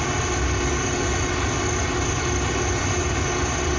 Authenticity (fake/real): real